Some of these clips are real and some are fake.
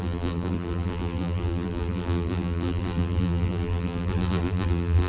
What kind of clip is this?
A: fake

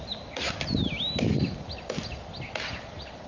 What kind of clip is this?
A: real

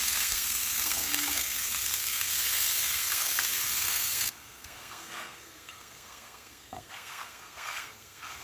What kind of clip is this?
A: fake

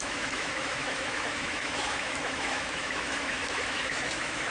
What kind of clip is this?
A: fake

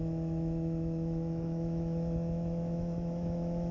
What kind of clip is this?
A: fake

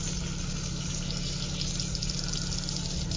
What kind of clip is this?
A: real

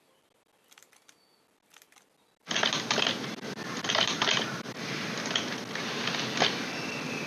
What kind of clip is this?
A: real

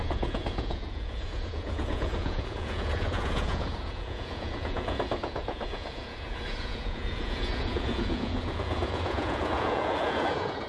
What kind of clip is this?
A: fake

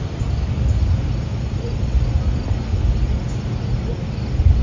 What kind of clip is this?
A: real